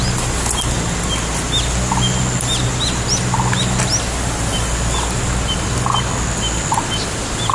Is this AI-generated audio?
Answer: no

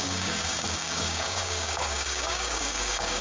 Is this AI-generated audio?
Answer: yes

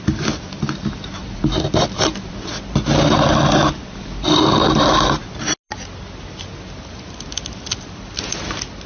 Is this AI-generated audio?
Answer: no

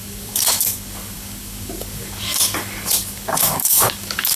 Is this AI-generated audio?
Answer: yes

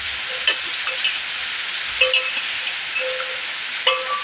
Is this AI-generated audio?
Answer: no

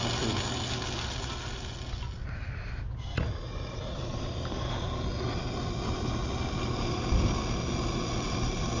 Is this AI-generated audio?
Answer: no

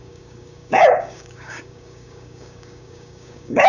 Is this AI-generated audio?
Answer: yes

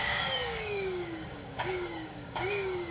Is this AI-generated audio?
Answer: yes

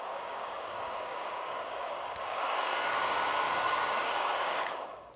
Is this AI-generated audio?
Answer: yes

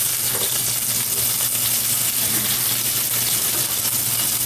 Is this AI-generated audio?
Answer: no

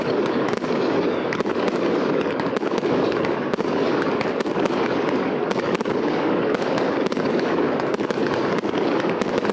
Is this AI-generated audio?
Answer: yes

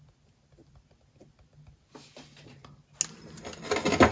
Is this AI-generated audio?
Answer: no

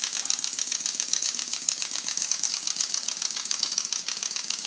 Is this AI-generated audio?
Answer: yes